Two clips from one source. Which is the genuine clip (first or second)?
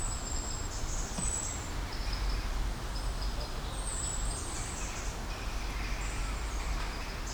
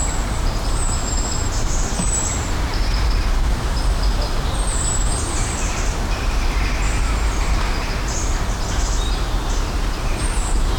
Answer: first